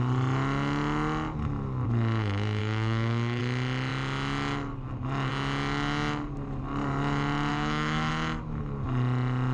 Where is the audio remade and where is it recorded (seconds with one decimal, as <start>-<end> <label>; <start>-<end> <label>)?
0.0-2.6 recorded; 2.6-3.4 remade; 3.4-7.5 recorded; 7.5-8.1 remade; 8.1-9.5 recorded